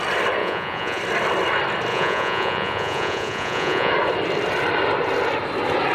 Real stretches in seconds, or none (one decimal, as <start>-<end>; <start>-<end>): 0.0-0.4; 1.0-1.9; 3.9-5.9